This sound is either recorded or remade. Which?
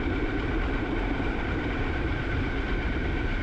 remade